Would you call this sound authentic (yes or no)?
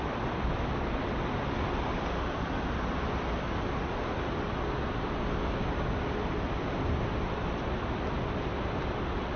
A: yes